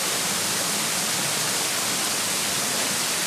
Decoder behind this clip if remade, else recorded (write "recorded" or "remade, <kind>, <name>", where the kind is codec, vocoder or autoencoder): recorded